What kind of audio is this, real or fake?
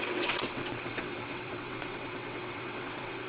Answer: fake